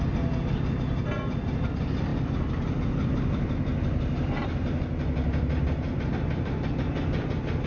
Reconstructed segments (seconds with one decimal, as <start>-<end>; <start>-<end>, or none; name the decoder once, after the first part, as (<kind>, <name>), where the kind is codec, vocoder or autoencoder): none